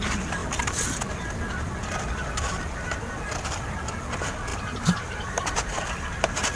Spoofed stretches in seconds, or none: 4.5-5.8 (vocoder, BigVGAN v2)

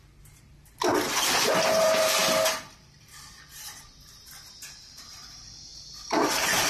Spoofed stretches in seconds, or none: 0.0-6.7 (vocoder, BigVGAN v2)

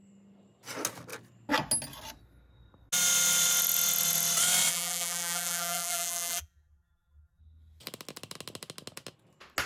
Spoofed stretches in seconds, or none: 4.7-7.4 (vocoder, BigVGAN v2)

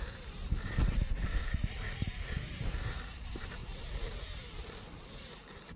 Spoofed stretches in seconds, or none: 0.0-3.6 (vocoder, BigVGAN v2); 5.2-5.8

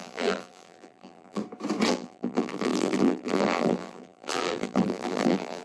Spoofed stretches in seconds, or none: 0.0-1.4 (vocoder, BigVGAN v2); 1.9-5.6

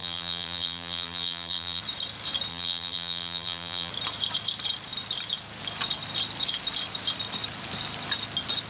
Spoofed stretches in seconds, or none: 0.0-1.8 (vocoder, BigVGAN v2); 2.5-3.9

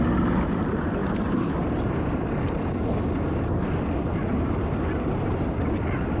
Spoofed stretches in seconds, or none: none

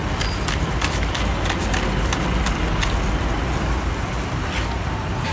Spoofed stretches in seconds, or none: none